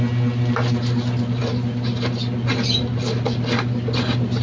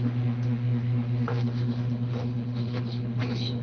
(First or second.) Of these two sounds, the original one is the first